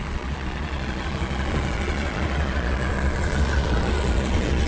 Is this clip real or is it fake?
fake